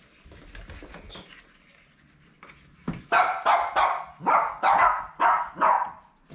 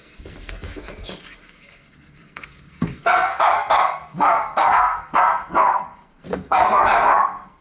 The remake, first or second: second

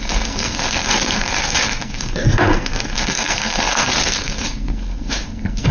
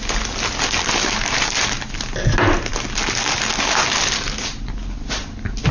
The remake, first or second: first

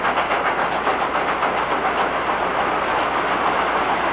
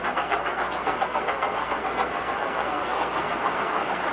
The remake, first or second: second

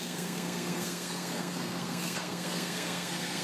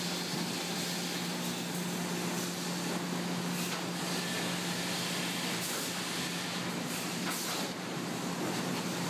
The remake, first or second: first